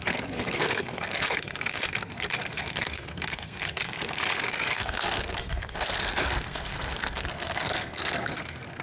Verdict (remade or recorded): remade